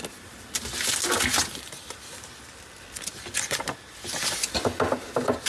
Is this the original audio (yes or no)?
yes